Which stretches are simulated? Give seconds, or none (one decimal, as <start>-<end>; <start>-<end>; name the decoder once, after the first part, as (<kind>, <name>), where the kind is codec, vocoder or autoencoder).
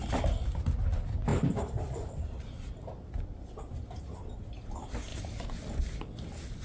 1.3-4.0 (vocoder, BigVGAN v2)